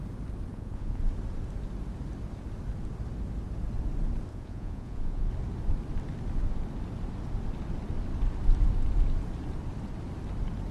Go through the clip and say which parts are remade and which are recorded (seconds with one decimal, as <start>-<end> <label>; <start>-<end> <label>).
0.0-0.5 recorded; 0.5-1.0 remade; 1.0-4.3 recorded; 4.3-5.3 remade; 5.3-10.7 recorded